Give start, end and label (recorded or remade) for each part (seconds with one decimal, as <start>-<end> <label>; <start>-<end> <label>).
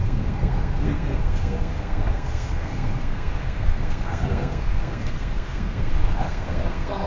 0.0-7.1 remade